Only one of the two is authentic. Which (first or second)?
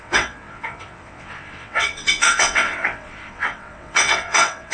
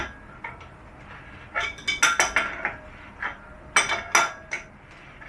second